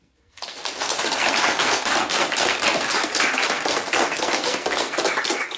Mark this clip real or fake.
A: fake